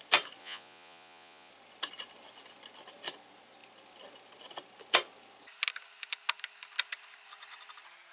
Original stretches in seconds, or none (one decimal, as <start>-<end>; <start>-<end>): 0.0-0.4; 1.5-8.1